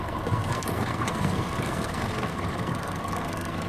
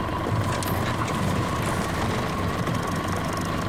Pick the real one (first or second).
second